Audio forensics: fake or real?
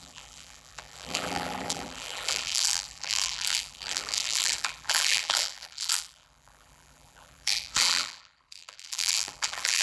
fake